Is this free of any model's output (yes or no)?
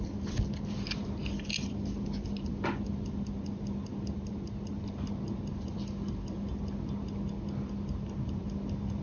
yes